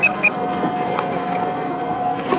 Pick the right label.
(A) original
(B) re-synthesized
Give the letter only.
B